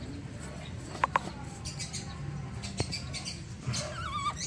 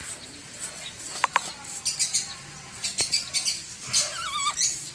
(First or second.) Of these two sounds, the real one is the first